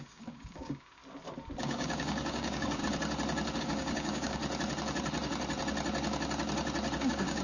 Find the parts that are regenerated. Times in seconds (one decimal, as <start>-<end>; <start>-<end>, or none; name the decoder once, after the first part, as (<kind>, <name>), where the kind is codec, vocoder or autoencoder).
0.0-1.0 (codec, DAC); 1.6-2.8; 3.6-4.4; 7.0-7.4